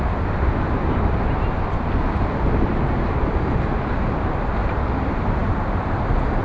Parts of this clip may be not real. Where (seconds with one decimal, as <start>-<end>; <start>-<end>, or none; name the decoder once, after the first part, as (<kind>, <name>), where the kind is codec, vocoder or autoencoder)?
none

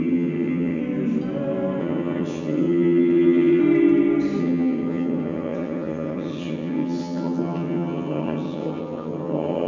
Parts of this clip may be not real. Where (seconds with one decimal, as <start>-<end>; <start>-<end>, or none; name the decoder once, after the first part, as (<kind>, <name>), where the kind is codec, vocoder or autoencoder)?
0.0-0.8 (vocoder, HiFi-GAN); 1.8-3.6; 4.4-9.7

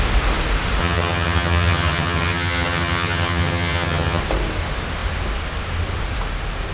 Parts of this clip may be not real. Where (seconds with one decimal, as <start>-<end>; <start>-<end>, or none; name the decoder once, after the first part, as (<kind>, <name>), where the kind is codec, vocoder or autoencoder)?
0.8-4.2 (vocoder, HiFi-GAN)

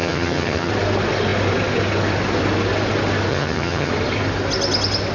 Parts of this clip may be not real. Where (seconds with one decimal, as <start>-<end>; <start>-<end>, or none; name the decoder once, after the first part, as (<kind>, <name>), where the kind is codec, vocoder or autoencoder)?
0.0-0.7 (vocoder, HiFi-GAN); 3.3-3.9

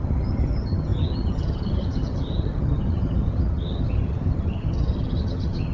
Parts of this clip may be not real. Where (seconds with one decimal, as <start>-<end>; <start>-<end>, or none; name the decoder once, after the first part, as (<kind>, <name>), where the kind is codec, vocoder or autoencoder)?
0.0-5.7 (vocoder, HiFi-GAN)